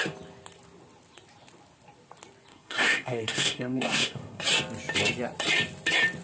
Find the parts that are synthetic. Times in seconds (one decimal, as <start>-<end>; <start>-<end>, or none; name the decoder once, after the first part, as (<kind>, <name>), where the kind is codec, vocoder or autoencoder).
2.5-4.4 (codec, SNAC)